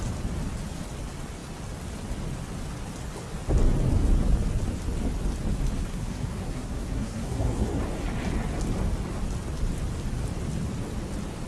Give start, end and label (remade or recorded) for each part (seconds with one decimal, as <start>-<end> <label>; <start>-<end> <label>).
0.0-5.9 recorded; 5.9-7.8 remade; 7.8-11.5 recorded